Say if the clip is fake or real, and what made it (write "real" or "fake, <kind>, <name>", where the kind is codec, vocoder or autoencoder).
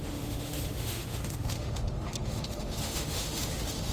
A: fake, autoencoder, DAC-VAE